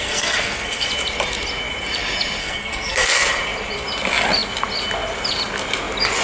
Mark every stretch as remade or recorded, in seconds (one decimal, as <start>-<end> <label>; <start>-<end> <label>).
0.0-0.9 remade; 0.9-2.4 recorded; 2.4-3.3 remade; 3.3-6.2 recorded

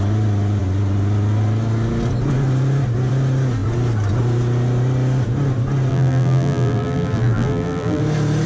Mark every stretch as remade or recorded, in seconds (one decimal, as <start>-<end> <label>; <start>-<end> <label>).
0.0-5.9 recorded; 5.9-8.0 remade; 8.0-8.5 recorded

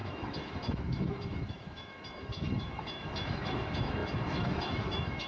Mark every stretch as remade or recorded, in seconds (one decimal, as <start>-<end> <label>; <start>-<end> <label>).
0.0-5.3 remade

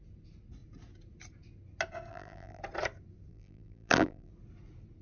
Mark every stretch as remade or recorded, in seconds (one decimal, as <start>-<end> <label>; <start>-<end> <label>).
0.0-2.1 recorded; 2.1-2.6 remade; 2.6-3.3 recorded; 3.3-4.3 remade; 4.3-5.0 recorded

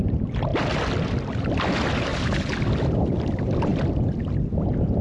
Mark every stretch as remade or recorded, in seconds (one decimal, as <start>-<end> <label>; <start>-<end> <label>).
0.0-5.0 recorded

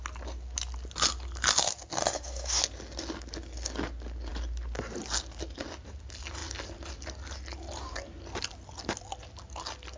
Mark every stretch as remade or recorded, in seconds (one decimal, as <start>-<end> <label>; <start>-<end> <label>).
0.0-2.0 recorded; 2.0-2.6 remade; 2.6-10.0 recorded